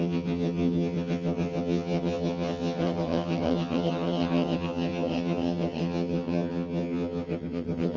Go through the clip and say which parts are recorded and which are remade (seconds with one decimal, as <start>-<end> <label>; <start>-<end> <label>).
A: 0.0-8.0 remade